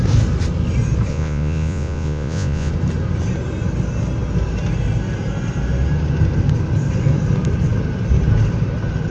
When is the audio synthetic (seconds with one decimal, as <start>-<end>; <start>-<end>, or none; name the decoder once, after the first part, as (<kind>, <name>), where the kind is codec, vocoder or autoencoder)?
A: 1.1-2.7 (vocoder, Vocos)